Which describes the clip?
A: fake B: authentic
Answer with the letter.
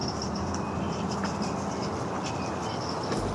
B